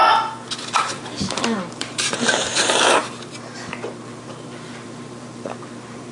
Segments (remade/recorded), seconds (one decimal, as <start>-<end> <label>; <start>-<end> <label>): 0.0-0.9 recorded; 0.9-3.0 remade; 3.0-4.0 recorded; 4.0-6.1 remade